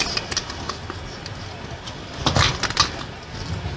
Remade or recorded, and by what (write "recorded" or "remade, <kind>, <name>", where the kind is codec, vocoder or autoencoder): recorded